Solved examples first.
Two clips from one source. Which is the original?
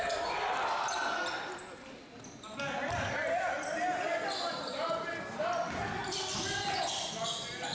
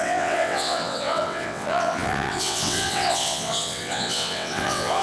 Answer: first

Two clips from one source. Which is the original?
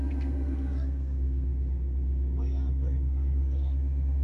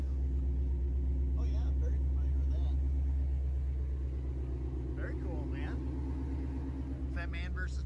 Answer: second